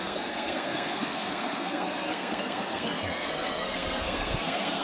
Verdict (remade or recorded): remade